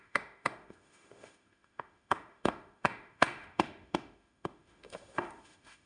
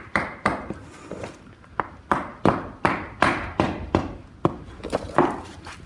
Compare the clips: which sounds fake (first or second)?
first